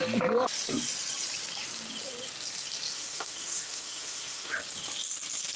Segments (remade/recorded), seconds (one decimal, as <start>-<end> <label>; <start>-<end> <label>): 0.0-2.9 recorded; 2.9-4.5 remade; 4.5-5.6 recorded